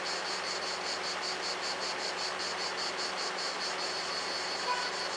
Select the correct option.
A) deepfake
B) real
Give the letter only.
B